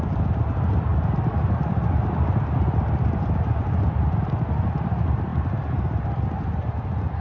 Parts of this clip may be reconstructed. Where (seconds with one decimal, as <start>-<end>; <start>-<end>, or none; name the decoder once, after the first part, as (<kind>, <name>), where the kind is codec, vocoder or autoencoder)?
none